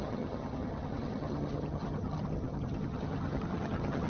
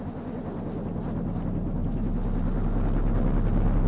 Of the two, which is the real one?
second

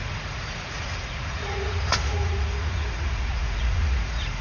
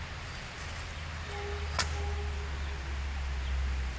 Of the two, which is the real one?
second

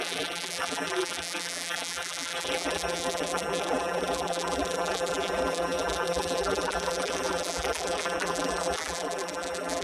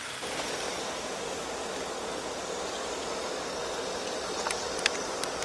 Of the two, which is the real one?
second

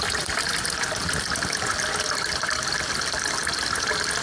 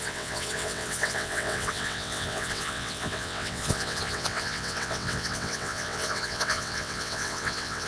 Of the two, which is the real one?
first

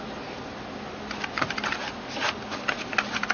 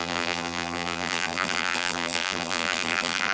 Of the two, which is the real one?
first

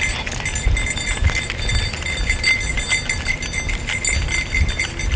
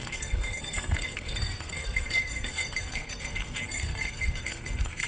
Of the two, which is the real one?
first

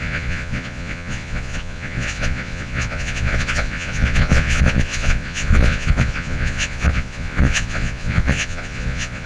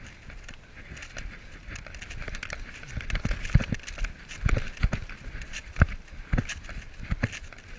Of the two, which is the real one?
second